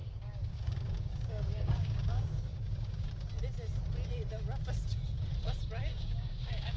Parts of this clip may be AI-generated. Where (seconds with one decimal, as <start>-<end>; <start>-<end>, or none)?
0.0-3.1; 5.9-6.8